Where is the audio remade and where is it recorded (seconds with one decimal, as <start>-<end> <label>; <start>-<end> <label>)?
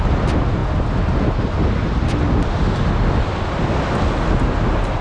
0.0-5.0 recorded